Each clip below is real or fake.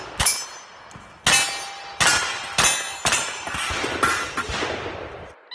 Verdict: real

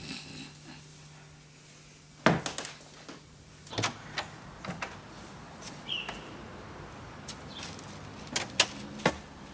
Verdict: real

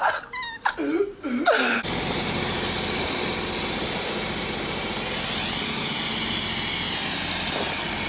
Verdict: real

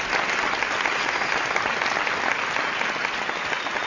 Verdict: real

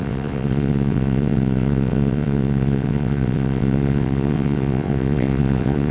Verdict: fake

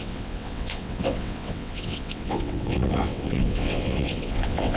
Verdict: fake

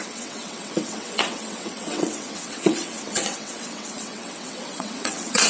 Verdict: fake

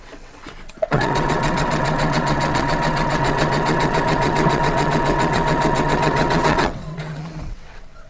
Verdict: fake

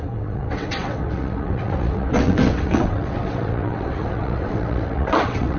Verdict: fake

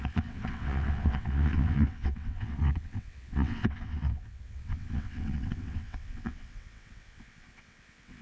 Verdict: fake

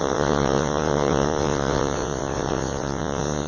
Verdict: fake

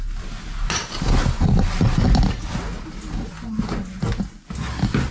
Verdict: real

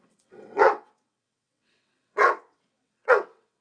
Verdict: fake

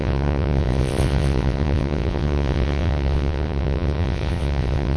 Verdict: fake